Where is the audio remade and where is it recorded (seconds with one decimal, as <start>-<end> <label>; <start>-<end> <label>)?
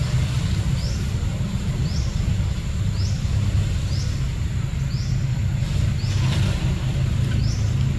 0.0-8.0 recorded